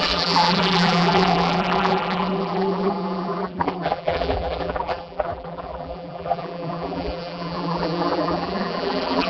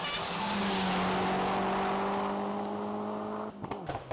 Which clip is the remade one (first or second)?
first